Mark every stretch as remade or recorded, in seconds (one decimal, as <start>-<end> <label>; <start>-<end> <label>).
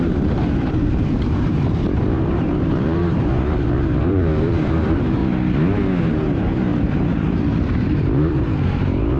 0.0-3.3 remade; 3.3-4.0 recorded; 4.0-5.2 remade; 5.2-6.0 recorded; 6.0-9.2 remade